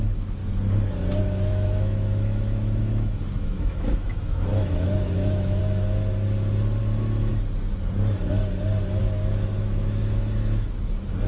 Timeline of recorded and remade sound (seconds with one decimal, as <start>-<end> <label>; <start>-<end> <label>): 0.0-0.4 remade; 0.4-1.2 recorded; 1.2-5.6 remade; 5.6-6.8 recorded; 6.8-7.3 remade; 7.3-9.0 recorded; 9.0-11.3 remade